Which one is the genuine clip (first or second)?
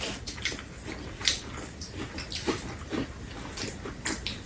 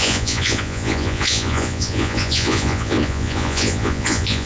first